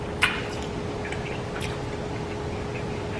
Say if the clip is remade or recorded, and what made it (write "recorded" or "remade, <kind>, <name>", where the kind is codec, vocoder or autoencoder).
recorded